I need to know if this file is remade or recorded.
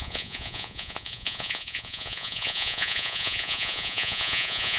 remade